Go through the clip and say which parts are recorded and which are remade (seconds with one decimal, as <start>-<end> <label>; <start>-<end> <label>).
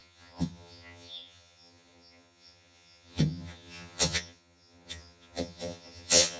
0.0-6.4 remade